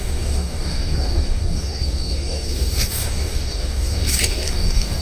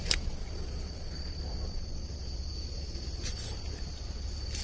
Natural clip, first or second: second